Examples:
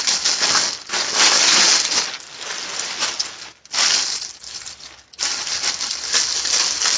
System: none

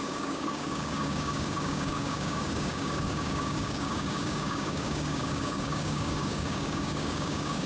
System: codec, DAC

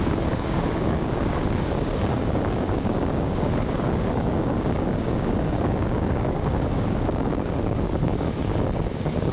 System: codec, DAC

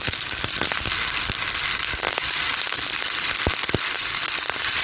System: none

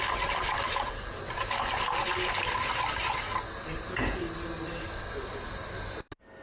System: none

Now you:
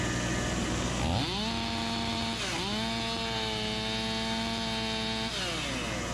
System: none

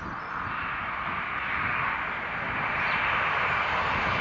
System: none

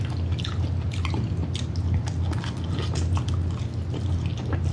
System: none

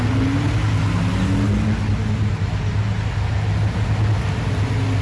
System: none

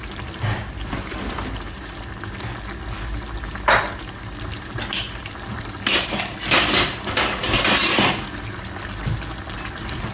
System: none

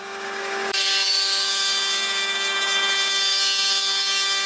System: codec, DAC